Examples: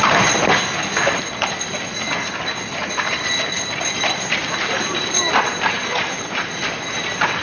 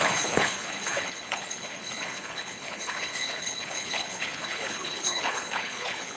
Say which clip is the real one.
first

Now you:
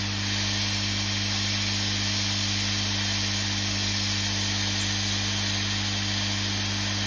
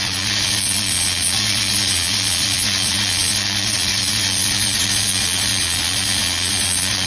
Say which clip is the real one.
first